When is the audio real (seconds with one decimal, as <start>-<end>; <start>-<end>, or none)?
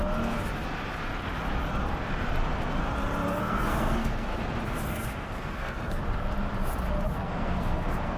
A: 0.0-3.4; 4.3-4.9; 6.0-7.1